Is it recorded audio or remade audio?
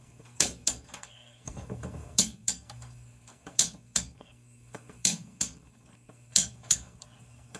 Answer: remade